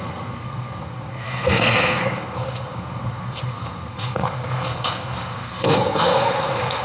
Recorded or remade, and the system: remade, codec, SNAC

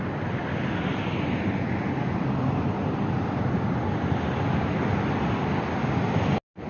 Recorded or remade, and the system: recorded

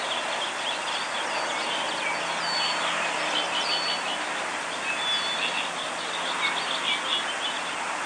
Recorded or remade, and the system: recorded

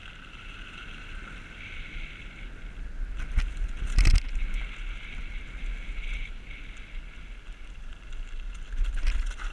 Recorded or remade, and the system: recorded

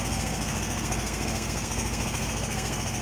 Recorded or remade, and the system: remade, codec, SNAC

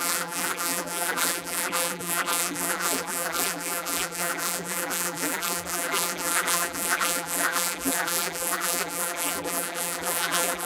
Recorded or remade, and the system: remade, vocoder, BigVGAN v2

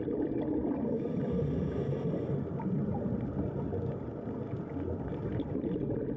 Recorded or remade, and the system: recorded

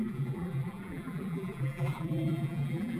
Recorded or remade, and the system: remade, vocoder, BigVGAN v2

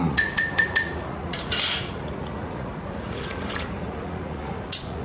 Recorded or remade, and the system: remade, vocoder, Vocos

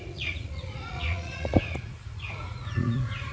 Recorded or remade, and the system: remade, vocoder, Vocos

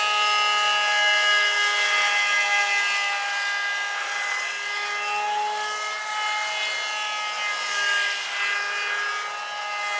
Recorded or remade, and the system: recorded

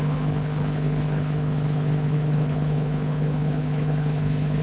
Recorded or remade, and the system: remade, codec, HILCodec